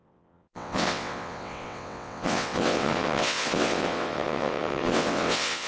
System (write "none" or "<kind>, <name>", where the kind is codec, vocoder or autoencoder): vocoder, WaveNeXt